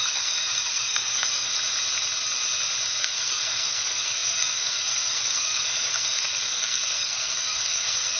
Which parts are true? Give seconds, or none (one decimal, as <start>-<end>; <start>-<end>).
1.5-3.0